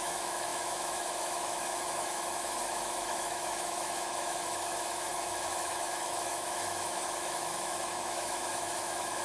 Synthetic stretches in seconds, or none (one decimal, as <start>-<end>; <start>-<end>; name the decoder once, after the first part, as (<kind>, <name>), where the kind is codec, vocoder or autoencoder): 0.0-9.2 (autoencoder, DAC-VAE)